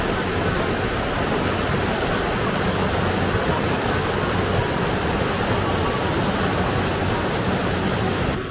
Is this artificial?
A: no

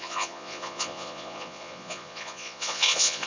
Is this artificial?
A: yes